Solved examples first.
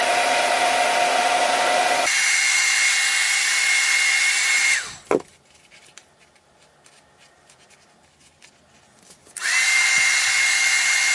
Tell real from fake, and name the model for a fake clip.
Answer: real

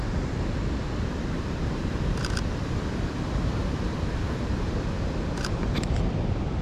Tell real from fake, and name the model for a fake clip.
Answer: fake, vocoder, BigVGAN v2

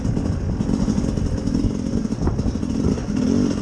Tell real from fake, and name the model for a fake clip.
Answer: real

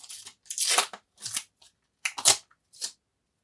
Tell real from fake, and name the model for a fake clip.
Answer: real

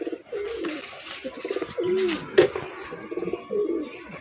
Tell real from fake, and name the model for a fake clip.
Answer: real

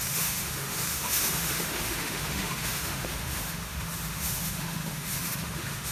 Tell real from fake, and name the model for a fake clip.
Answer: fake, autoencoder, DAC-VAE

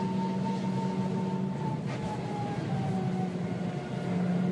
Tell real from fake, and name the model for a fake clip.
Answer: real